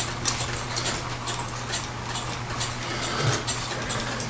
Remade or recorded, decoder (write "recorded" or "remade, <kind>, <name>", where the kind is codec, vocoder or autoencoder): recorded